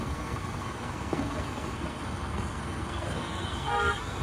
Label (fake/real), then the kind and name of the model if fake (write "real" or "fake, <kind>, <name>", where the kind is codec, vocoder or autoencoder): fake, codec, SNAC